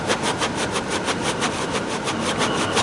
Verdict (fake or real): real